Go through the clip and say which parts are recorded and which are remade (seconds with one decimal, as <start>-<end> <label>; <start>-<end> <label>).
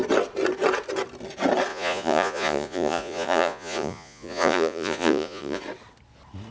0.0-1.7 recorded; 1.7-5.6 remade; 5.6-6.5 recorded